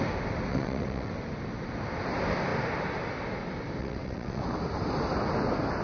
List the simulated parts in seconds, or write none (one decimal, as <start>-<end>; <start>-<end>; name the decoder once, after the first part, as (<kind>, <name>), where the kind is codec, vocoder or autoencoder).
0.5-1.1 (vocoder, WaveNeXt); 3.8-4.4